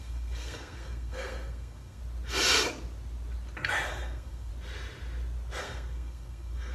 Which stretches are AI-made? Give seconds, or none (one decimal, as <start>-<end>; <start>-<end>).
0.0-2.0; 3.9-4.5; 5.6-6.7